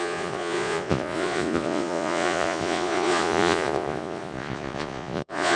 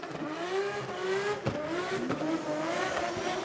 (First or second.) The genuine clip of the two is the second